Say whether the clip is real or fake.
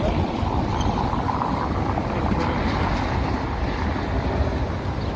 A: real